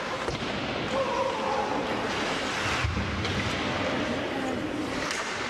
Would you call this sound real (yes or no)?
yes